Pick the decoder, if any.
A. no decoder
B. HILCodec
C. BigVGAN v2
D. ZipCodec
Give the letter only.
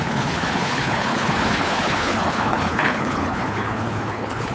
B